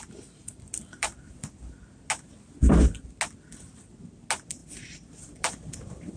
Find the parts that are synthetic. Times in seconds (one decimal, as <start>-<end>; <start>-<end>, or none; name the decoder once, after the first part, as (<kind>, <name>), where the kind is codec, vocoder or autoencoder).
0.4-2.1 (vocoder, BigVGAN v2); 4.6-6.2